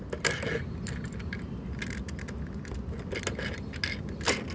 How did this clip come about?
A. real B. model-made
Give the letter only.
A